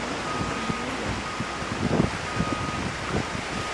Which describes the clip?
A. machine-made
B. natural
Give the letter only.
B